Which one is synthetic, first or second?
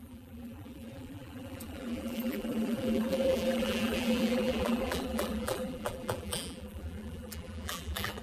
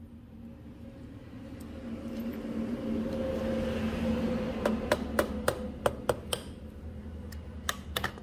first